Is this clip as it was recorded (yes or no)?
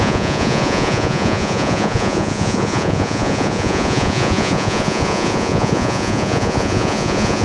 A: no